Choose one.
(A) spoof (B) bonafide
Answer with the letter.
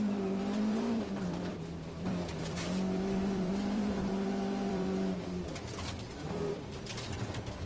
A